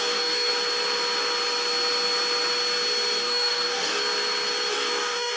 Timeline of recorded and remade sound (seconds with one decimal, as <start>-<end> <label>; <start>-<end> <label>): 0.0-0.5 remade; 0.5-3.2 recorded; 3.2-4.0 remade; 4.0-4.7 recorded; 4.7-5.4 remade